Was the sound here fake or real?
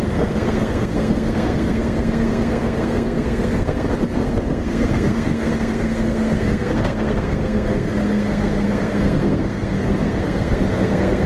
fake